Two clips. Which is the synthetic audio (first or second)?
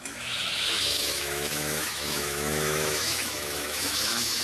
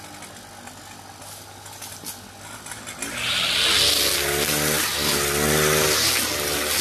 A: first